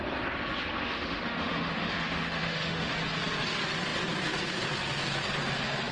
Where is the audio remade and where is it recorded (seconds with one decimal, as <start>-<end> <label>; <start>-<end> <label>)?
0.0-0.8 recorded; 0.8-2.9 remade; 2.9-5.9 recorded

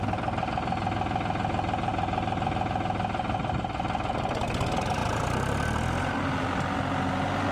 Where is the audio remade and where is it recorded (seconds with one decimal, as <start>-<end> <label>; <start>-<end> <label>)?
0.0-7.5 recorded

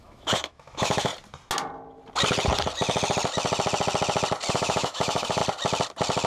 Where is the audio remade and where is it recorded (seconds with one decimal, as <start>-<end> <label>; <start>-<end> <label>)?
0.0-1.1 remade; 1.1-4.5 recorded; 4.5-5.4 remade; 5.4-6.3 recorded